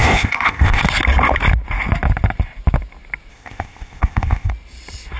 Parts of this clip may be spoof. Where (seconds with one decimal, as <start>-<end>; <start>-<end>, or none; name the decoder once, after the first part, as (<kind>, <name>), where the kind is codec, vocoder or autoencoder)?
0.0-0.8 (codec, ZipCodec); 3.3-4.5